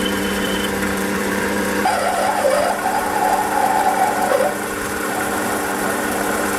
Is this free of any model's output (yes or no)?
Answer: no